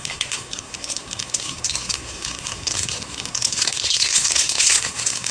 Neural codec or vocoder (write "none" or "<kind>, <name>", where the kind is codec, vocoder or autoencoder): codec, SNAC